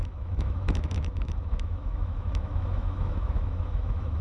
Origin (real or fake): fake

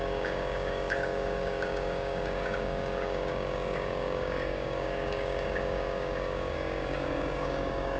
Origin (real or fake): fake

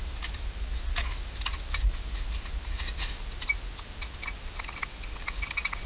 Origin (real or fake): real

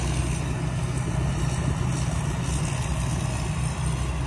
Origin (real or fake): real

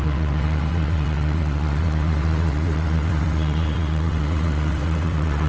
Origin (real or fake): fake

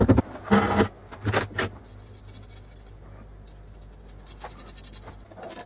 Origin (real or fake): real